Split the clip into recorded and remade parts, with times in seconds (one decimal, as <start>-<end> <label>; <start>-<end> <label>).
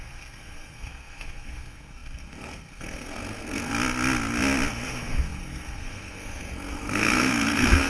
0.0-3.7 remade; 3.7-4.7 recorded; 4.7-7.9 remade